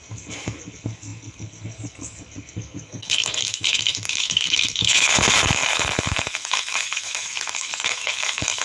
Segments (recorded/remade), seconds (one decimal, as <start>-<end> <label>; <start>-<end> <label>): 0.0-8.6 remade